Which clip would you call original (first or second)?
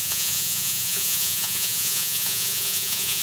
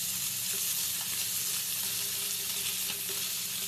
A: second